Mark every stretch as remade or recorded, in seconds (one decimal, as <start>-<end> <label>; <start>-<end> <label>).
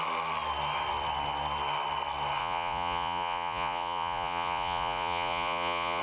0.0-2.4 recorded; 2.4-6.0 remade